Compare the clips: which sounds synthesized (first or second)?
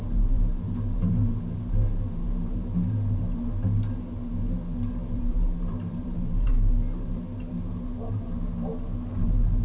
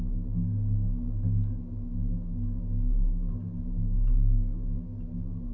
first